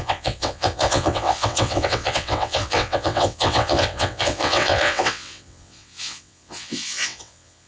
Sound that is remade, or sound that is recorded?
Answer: remade